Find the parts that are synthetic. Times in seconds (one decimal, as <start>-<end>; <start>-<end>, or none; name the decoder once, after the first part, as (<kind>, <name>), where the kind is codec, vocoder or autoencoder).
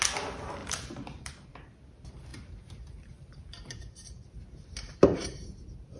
0.6-1.3 (vocoder, BigVGAN v2); 2.3-6.0